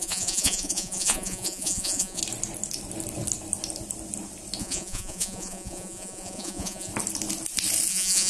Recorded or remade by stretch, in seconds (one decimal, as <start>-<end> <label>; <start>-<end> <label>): 0.0-2.2 remade; 2.2-4.6 recorded; 4.6-6.9 remade; 6.9-7.9 recorded; 7.9-8.3 remade